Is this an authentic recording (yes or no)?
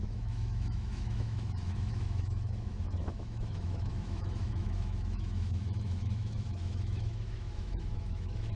no